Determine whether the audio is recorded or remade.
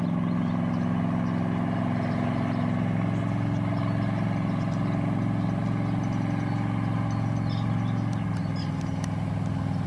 recorded